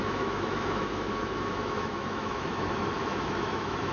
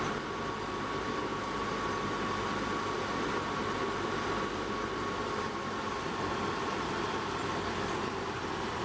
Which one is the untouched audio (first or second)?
second